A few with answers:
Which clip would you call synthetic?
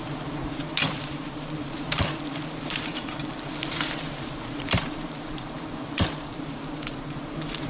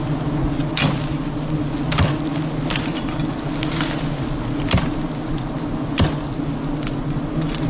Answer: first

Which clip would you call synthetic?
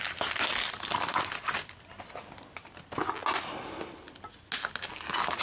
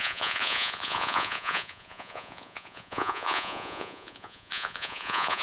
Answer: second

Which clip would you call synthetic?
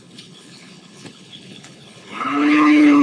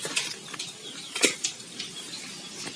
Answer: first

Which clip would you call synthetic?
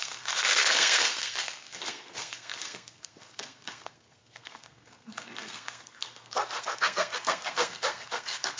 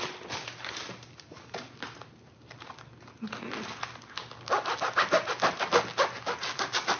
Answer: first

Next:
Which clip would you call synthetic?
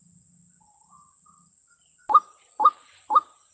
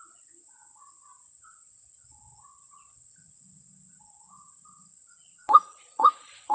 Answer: second